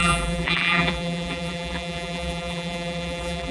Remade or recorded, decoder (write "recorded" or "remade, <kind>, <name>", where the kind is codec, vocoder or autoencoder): remade, vocoder, BigVGAN v2